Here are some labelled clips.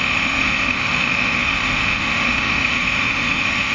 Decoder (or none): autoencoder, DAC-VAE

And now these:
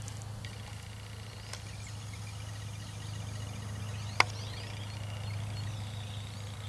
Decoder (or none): none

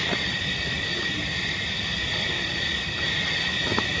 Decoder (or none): vocoder, BigVGAN v2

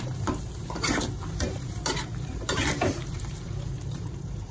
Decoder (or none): vocoder, BigVGAN v2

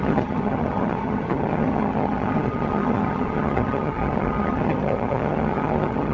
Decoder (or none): vocoder, HiFi-GAN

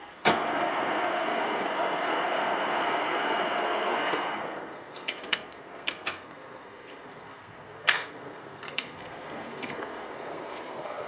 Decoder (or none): codec, SNAC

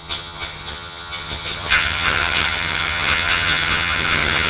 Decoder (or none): vocoder, HiFi-GAN